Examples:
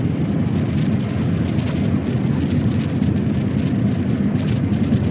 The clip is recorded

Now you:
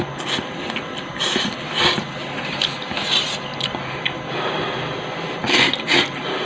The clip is recorded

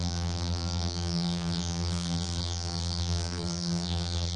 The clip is remade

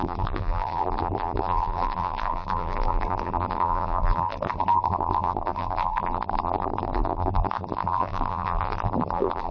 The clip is remade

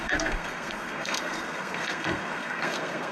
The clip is remade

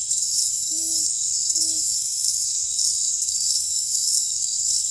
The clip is remade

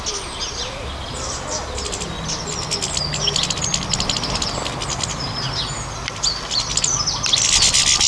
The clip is recorded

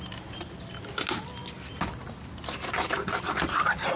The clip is recorded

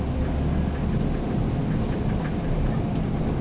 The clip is recorded